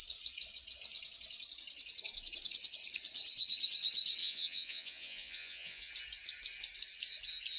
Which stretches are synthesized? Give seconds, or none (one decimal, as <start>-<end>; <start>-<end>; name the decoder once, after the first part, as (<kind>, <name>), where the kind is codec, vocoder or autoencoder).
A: 4.2-5.9 (vocoder, Vocos)